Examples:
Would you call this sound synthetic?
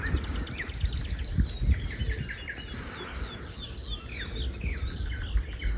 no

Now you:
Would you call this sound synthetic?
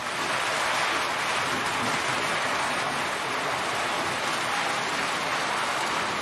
no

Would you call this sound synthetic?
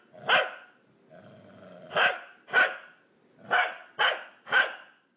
no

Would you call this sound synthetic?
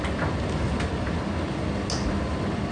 no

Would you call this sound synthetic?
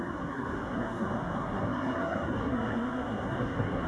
yes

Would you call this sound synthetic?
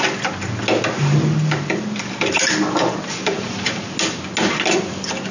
no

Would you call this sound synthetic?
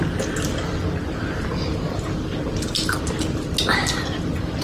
no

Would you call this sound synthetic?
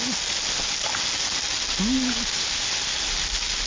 no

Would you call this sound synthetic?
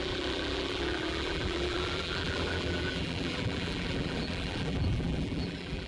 yes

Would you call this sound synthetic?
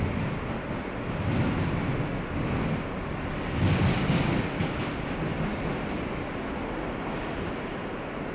no